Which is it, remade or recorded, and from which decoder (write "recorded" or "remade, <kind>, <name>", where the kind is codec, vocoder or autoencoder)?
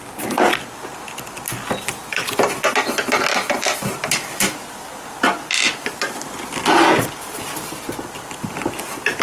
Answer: recorded